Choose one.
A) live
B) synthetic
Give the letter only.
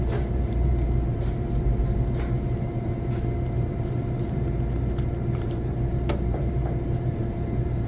B